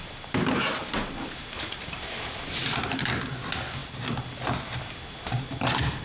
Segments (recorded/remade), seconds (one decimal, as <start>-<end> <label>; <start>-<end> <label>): 0.0-6.0 recorded